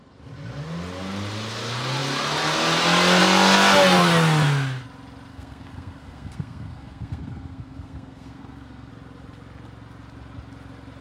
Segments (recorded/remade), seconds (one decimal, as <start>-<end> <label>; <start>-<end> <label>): 0.0-5.3 recorded; 5.3-8.9 remade; 8.9-11.0 recorded